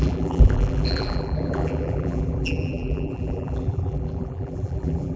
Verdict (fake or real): fake